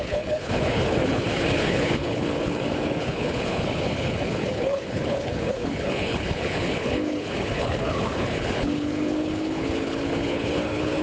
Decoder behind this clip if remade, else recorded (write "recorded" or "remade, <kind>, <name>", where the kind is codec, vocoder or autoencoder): remade, codec, HILCodec